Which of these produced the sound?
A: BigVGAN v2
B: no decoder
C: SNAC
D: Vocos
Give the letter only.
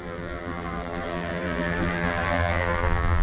A